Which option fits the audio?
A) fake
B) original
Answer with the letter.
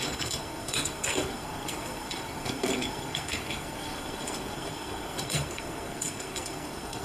A